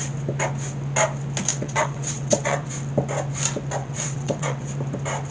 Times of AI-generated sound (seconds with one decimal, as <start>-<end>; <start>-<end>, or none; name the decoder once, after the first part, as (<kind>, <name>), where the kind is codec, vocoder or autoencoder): 1.5-2.7 (vocoder, WaveNeXt); 3.8-4.7